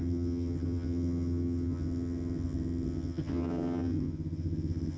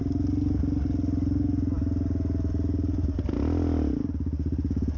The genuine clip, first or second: second